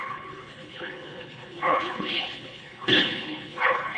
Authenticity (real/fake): fake